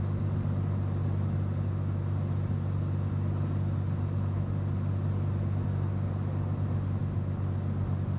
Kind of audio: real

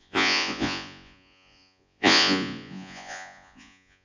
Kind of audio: fake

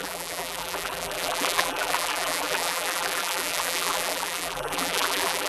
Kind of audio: fake